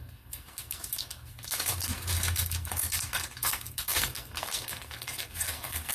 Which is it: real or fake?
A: fake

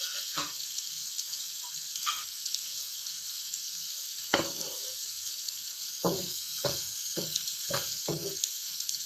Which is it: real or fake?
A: fake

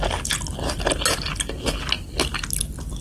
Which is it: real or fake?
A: real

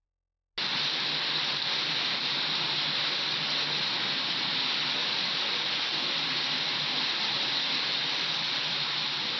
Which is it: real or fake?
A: real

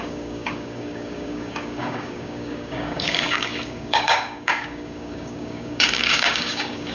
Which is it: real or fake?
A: fake